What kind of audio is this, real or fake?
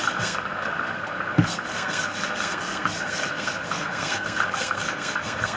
fake